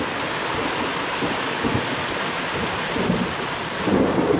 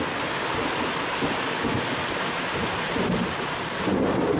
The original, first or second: second